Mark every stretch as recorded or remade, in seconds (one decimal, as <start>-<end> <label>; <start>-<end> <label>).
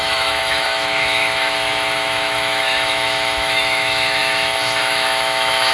0.0-5.7 remade